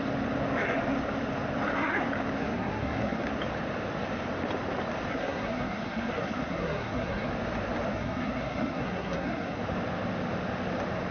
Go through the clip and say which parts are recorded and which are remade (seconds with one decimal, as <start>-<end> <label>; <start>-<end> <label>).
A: 0.0-2.4 recorded; 2.4-3.3 remade; 3.3-5.1 recorded; 5.1-7.3 remade; 7.3-7.9 recorded; 7.9-9.6 remade; 9.6-11.1 recorded

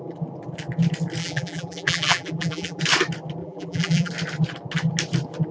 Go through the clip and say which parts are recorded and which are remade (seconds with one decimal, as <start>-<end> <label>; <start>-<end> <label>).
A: 0.0-1.2 recorded; 1.2-2.8 remade; 2.8-3.4 recorded; 3.4-4.1 remade; 4.1-5.5 recorded

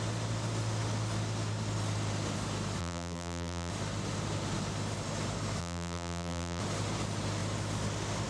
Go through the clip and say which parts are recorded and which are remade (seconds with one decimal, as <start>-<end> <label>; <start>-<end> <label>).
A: 0.0-2.8 recorded; 2.8-3.7 remade; 3.7-5.6 recorded; 5.6-6.6 remade; 6.6-8.3 recorded